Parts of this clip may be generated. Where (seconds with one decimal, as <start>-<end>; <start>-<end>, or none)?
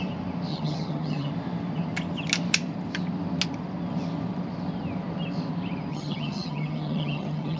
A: 0.5-1.3; 5.9-7.6